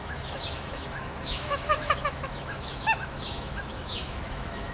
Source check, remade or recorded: remade